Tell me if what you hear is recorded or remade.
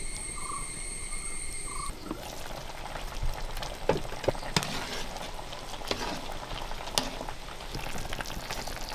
recorded